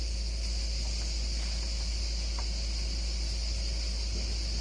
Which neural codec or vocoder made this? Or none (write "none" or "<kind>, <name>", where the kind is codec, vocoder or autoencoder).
none